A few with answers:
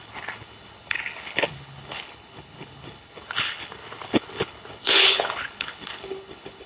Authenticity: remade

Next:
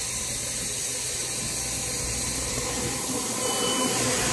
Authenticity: recorded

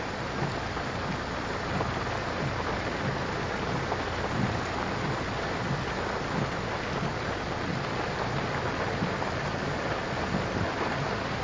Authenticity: recorded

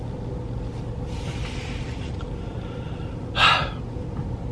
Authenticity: recorded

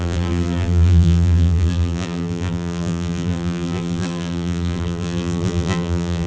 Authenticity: remade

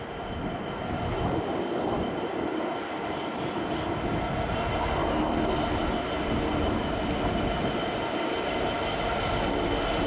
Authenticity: recorded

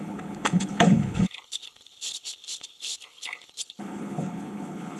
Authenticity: remade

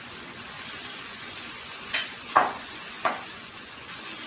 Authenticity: remade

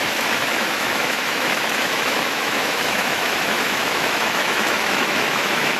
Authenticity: remade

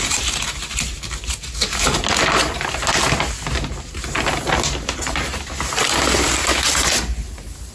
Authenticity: recorded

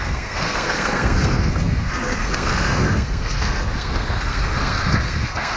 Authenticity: remade